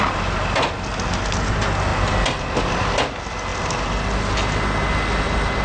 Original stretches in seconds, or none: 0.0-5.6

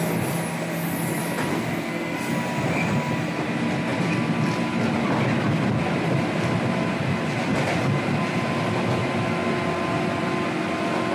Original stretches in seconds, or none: 0.0-1.5; 2.3-11.1